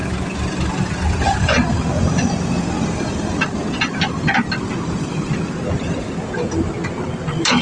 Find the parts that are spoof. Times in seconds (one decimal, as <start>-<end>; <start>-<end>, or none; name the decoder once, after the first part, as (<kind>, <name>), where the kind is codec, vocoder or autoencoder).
none